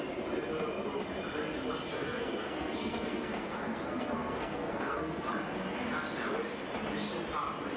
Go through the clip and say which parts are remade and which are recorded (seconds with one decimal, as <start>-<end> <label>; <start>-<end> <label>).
0.0-1.9 recorded; 1.9-5.3 remade; 5.3-7.8 recorded